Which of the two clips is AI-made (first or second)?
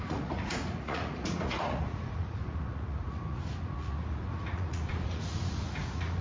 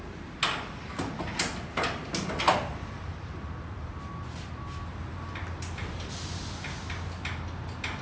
first